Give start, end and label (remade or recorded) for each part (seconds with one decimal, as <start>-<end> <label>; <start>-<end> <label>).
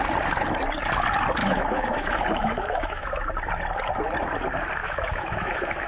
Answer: 0.0-1.4 recorded; 1.4-3.1 remade; 3.1-4.8 recorded; 4.8-5.9 remade